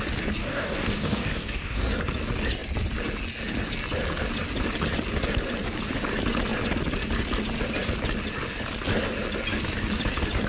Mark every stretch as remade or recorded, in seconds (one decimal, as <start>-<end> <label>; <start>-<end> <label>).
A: 0.0-0.4 recorded; 0.4-1.9 remade; 1.9-10.5 recorded